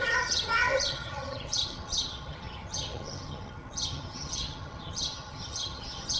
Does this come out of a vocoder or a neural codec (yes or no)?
yes